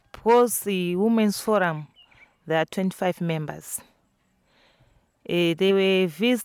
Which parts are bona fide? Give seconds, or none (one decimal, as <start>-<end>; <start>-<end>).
0.0-6.4